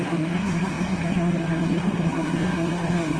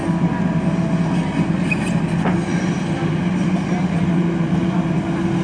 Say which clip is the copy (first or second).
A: first